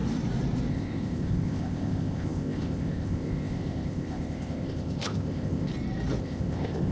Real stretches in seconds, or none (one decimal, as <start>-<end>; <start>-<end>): 0.0-0.7; 5.7-6.2

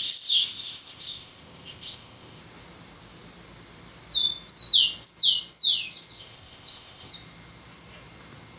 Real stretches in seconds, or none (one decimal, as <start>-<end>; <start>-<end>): 2.4-6.2; 7.1-8.6

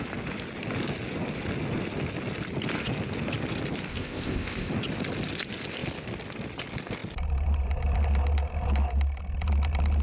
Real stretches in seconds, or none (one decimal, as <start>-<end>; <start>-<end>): 0.0-3.9; 4.7-10.0

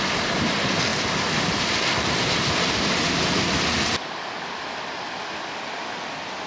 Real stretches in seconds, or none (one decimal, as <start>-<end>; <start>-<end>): 0.0-6.5

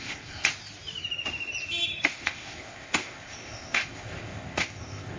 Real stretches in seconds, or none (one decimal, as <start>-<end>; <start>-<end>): 0.5-2.1